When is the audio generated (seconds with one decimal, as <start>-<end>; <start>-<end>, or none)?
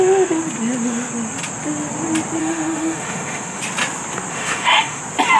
2.4-3.6; 4.3-5.0